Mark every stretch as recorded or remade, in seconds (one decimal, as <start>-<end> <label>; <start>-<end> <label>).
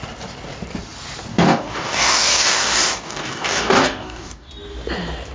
0.0-1.3 recorded; 1.3-4.5 remade; 4.5-5.3 recorded